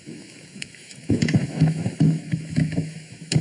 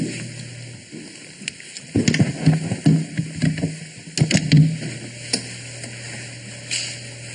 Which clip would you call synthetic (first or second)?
first